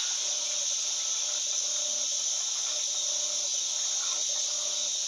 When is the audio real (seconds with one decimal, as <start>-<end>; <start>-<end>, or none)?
0.0-5.1